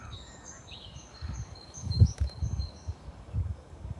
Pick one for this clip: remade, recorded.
remade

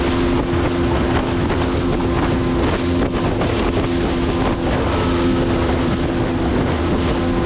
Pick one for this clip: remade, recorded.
recorded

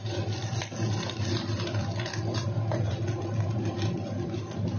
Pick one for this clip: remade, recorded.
recorded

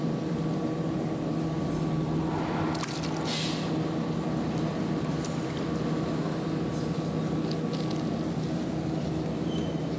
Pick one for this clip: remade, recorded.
recorded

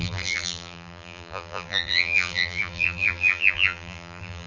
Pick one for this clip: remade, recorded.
remade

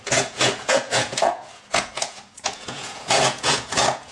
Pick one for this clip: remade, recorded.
remade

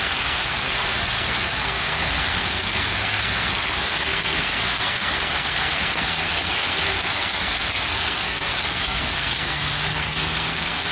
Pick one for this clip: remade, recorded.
remade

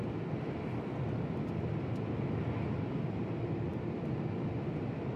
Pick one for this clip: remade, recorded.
recorded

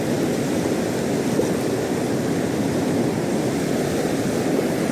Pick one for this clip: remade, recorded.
recorded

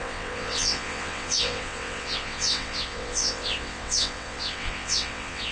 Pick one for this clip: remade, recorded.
remade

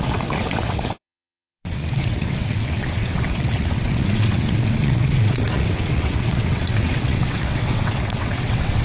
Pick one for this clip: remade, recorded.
remade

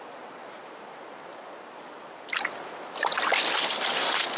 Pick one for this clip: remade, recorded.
recorded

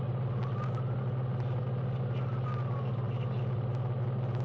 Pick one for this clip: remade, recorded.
recorded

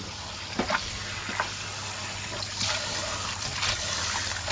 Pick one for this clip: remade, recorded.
recorded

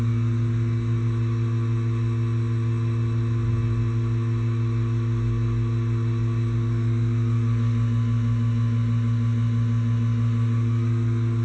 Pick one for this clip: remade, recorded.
recorded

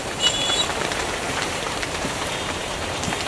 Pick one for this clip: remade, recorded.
remade